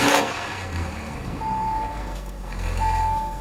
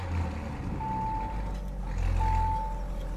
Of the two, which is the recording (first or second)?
second